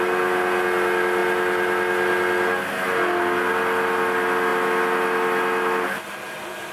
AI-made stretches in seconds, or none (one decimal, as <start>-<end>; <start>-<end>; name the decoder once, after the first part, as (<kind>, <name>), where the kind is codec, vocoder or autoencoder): none